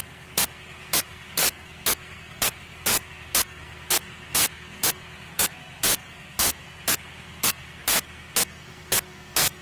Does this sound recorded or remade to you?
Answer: remade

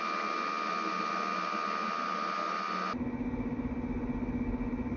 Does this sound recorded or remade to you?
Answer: recorded